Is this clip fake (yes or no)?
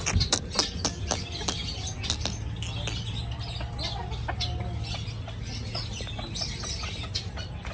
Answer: no